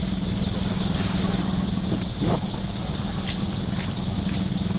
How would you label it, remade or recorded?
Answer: recorded